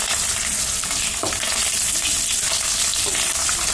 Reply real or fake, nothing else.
fake